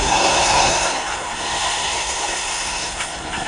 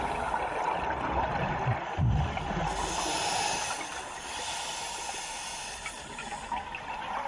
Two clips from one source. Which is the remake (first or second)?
first